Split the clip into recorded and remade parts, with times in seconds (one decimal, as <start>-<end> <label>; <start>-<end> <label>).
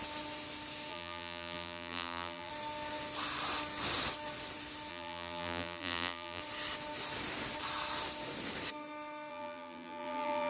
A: 0.0-0.9 recorded; 0.9-2.5 remade; 2.5-4.9 recorded; 4.9-6.4 remade; 6.4-9.3 recorded; 9.3-10.5 remade